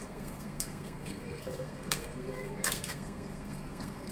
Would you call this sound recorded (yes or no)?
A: no